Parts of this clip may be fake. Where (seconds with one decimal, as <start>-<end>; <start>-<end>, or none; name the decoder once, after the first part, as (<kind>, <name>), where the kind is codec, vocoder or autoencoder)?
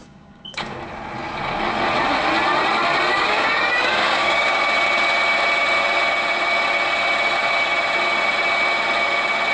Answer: 0.0-0.8 (codec, DAC); 3.1-4.6